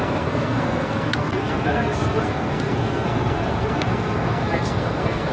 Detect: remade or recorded remade